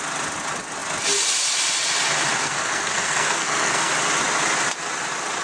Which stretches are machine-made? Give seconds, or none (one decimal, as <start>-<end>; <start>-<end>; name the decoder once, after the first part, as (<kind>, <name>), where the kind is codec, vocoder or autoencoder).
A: 2.4-3.9 (codec, SNAC)